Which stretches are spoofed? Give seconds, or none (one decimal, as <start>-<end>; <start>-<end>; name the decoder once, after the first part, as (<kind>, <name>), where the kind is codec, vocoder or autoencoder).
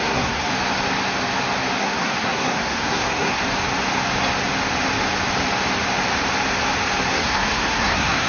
0.0-0.5 (codec, SNAC); 1.8-3.4; 7.1-8.3